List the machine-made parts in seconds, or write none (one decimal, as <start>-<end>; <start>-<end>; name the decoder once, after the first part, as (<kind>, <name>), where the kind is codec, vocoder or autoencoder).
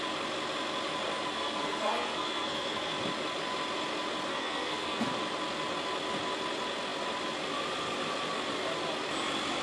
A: 1.3-2.9 (codec, SNAC); 4.3-5.1